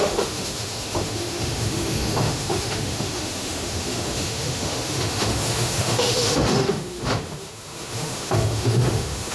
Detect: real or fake fake